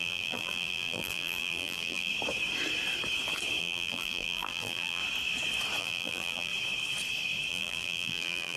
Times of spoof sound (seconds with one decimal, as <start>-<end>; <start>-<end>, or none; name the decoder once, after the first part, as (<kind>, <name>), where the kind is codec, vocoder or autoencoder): 0.0-2.1 (vocoder, BigVGAN v2); 3.6-5.0; 5.8-6.5; 7.5-8.6